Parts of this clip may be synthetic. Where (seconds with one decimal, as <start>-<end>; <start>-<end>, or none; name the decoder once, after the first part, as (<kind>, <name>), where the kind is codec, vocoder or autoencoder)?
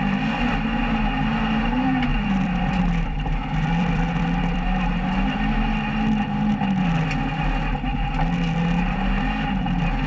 2.1-5.1 (vocoder, BigVGAN v2)